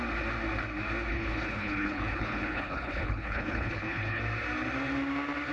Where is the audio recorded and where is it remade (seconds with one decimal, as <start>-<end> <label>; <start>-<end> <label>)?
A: 0.0-1.1 recorded; 1.1-4.2 remade; 4.2-5.5 recorded